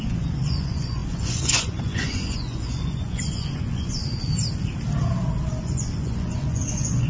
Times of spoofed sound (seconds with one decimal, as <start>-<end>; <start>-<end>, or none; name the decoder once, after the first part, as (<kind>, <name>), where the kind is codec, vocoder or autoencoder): 0.0-4.0 (vocoder, Vocos); 5.6-7.1